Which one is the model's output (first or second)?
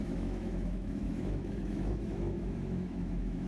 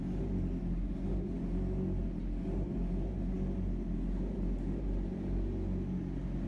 first